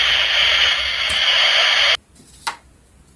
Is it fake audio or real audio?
real